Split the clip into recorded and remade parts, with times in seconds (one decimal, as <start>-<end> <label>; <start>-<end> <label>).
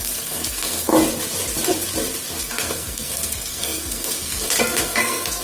0.0-0.9 remade; 0.9-2.4 recorded; 2.4-5.4 remade